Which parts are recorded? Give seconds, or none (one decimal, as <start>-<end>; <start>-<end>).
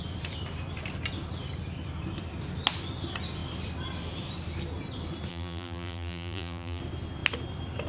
0.0-5.3; 6.8-7.9